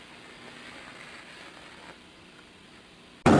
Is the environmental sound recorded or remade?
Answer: recorded